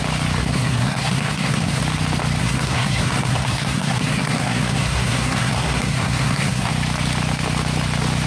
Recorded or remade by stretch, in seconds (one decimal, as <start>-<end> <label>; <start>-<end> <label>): 0.0-0.4 recorded; 0.4-1.8 remade; 1.8-2.4 recorded; 2.4-6.7 remade; 6.7-8.3 recorded